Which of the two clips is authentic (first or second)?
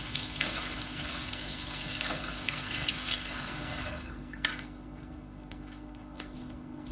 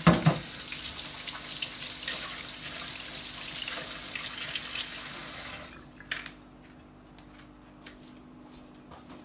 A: second